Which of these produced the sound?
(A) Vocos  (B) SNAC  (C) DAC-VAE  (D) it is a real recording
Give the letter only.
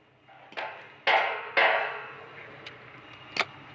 D